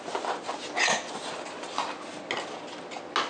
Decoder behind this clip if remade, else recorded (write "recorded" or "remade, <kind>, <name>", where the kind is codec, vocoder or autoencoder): recorded